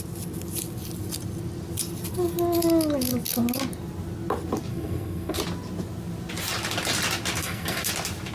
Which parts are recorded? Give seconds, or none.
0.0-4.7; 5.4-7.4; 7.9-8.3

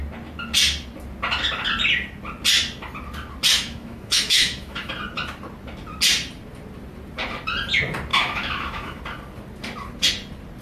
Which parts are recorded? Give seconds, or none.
0.0-3.5; 4.9-8.1; 9.0-10.6

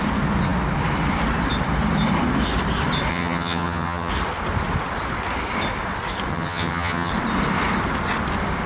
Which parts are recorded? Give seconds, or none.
0.0-3.1; 4.1-6.3; 7.1-8.7